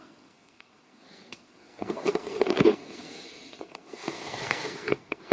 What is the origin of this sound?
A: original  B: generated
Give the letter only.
B